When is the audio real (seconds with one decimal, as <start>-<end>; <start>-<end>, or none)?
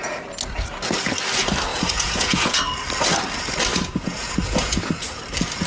0.0-1.7; 2.6-3.7; 5.2-5.7